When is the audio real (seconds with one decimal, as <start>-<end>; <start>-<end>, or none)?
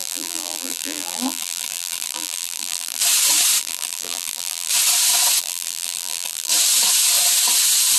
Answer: 3.0-3.6; 4.7-5.4; 6.5-8.0